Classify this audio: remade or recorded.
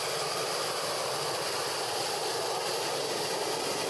recorded